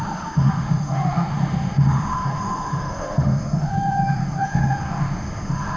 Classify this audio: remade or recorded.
remade